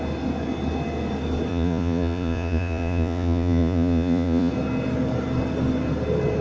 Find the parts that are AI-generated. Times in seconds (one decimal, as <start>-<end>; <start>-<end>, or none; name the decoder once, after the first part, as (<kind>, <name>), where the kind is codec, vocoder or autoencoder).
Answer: 1.5-4.5 (vocoder, Vocos)